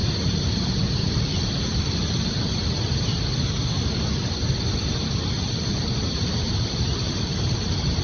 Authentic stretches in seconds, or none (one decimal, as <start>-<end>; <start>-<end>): 1.3-2.4; 3.1-5.4